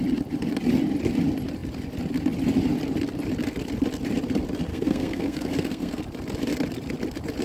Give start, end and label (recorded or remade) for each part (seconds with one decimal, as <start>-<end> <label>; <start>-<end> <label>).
0.0-4.7 recorded; 4.7-6.0 remade; 6.0-7.4 recorded